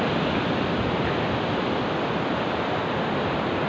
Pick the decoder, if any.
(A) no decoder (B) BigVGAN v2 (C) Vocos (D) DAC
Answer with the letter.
A